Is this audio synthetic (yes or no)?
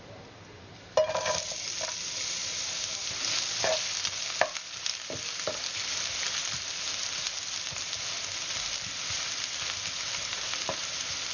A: no